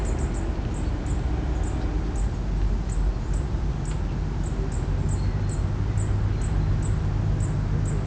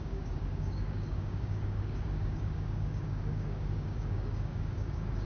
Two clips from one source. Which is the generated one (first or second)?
second